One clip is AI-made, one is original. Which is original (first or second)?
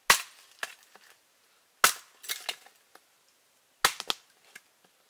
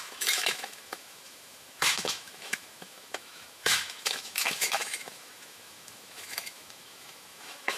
first